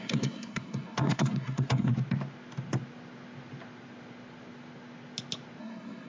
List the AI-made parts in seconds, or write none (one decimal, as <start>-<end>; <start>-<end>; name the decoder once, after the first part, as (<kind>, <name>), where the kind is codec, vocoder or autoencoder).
0.0-1.9 (codec, SNAC); 5.6-6.1